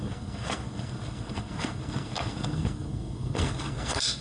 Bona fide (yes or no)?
no